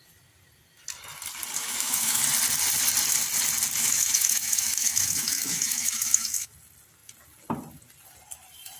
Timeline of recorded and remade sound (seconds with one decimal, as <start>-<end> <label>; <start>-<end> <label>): 0.0-1.6 recorded; 1.6-2.2 remade; 2.2-3.8 recorded; 3.8-6.5 remade; 6.5-8.8 recorded